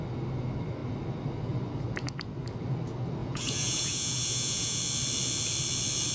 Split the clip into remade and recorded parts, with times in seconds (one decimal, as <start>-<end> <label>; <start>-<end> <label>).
0.0-3.2 recorded; 3.2-4.8 remade; 4.8-6.1 recorded